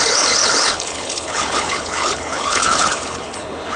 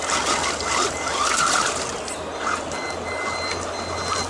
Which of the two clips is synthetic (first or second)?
first